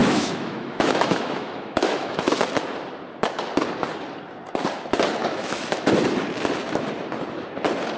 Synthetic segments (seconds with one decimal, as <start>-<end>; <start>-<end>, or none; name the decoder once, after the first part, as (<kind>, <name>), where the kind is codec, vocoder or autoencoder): 0.0-2.5 (autoencoder, DAC-VAE); 5.2-5.9